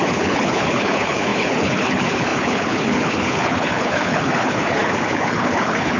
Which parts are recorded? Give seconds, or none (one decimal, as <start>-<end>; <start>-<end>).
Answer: none